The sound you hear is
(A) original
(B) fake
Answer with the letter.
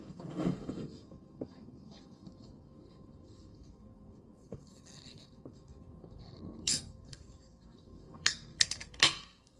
B